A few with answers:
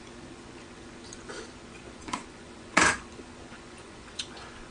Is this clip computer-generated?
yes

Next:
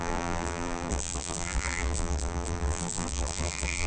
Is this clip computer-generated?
yes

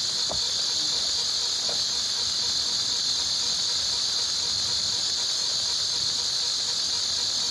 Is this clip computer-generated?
no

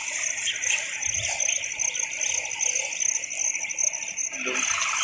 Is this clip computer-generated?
no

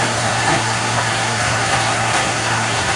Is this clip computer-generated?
yes